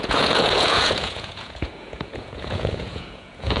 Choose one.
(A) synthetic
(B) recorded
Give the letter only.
A